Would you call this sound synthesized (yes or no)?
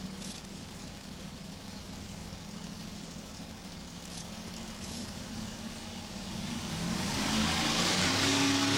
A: yes